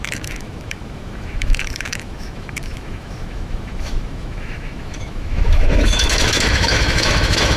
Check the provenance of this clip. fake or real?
fake